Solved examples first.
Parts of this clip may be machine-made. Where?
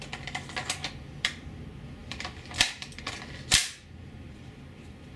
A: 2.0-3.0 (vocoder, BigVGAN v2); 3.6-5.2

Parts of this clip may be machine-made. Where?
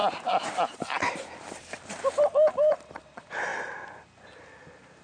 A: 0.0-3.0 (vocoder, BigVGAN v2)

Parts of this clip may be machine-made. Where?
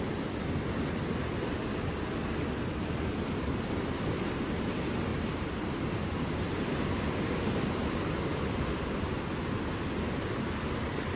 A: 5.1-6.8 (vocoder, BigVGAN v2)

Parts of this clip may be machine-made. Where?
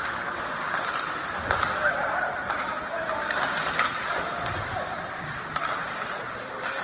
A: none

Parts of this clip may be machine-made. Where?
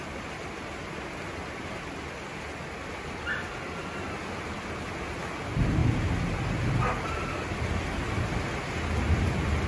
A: none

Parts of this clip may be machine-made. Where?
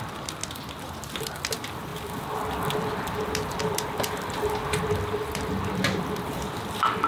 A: 0.0-0.4 (vocoder, BigVGAN v2); 1.2-7.1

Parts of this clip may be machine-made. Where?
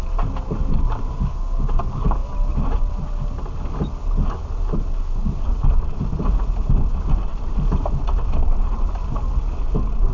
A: 7.3-7.9 (vocoder, BigVGAN v2)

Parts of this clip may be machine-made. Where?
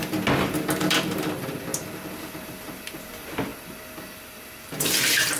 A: 0.9-1.7 (vocoder, BigVGAN v2); 2.4-5.4